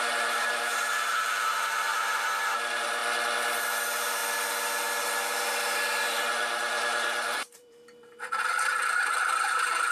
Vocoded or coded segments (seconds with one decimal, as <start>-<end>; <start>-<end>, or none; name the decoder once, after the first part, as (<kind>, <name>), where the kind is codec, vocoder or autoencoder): 0.0-3.0 (vocoder, BigVGAN v2); 3.6-4.2; 5.0-9.9